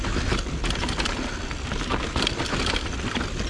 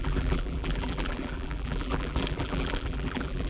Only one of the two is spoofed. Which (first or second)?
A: second